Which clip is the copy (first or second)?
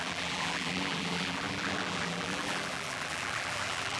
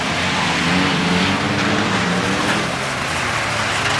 first